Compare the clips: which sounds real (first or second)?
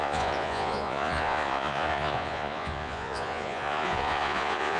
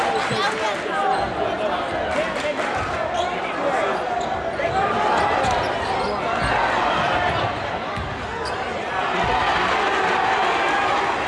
second